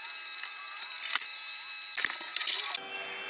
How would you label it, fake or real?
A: real